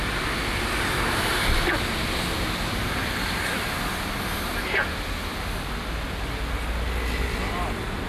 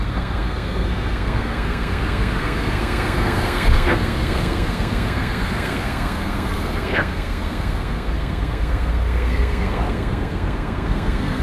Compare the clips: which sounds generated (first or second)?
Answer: second